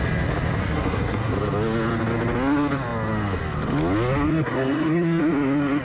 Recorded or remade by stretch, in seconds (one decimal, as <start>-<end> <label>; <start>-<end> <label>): 0.0-0.6 recorded; 0.6-1.3 remade; 1.3-4.3 recorded; 4.3-5.2 remade; 5.2-5.8 recorded